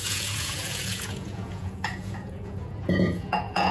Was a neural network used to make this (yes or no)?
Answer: yes